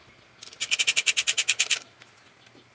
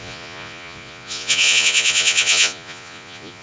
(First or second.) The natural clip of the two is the first